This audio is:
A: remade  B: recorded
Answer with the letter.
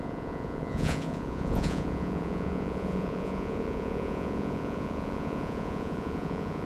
A